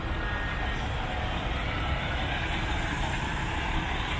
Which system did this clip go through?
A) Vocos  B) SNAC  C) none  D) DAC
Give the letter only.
C